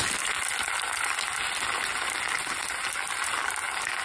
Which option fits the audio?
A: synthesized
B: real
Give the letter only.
B